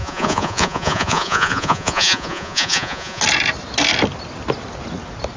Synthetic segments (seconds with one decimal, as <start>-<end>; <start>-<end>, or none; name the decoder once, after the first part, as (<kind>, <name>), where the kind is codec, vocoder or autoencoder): 0.0-3.2 (vocoder, Vocos)

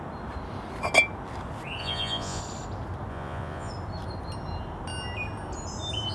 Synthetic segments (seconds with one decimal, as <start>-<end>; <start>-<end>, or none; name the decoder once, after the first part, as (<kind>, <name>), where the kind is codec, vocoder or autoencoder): 1.8-2.4 (vocoder, Vocos); 3.1-3.7

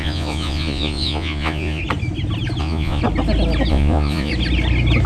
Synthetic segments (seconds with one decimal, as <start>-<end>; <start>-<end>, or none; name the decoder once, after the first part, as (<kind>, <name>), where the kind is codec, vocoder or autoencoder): 0.0-1.8 (vocoder, Vocos); 2.6-3.0; 3.7-4.3

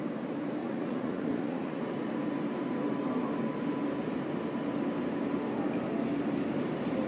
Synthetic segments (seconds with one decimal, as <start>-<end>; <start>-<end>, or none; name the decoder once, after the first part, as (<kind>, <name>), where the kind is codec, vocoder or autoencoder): 0.6-1.8 (vocoder, Vocos)